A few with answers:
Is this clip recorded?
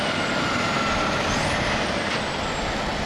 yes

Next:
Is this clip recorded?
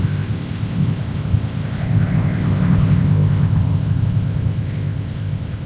no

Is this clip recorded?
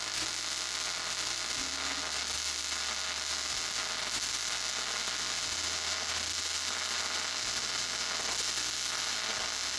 yes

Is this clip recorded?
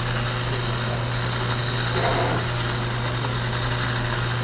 yes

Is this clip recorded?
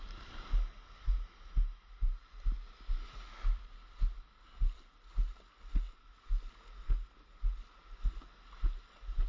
yes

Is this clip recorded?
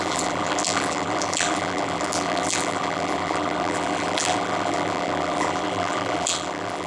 no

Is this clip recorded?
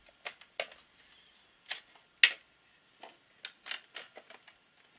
yes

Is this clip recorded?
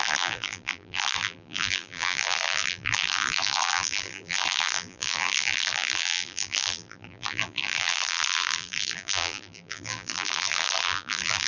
no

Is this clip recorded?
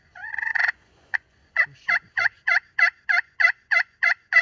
no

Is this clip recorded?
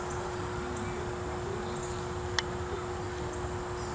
yes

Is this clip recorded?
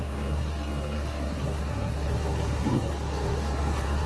no